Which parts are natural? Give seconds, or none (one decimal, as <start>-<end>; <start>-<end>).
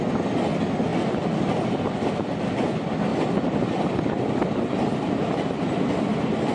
0.0-6.5